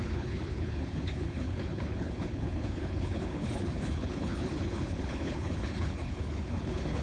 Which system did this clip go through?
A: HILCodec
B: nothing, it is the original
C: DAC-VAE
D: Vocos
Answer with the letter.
A